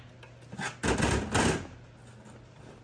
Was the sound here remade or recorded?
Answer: recorded